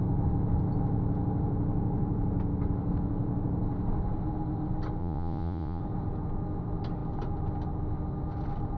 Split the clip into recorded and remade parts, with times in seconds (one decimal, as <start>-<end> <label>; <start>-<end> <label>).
0.0-5.0 recorded; 5.0-5.8 remade; 5.8-8.8 recorded